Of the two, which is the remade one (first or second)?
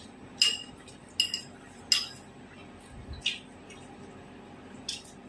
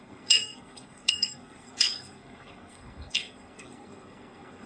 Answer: second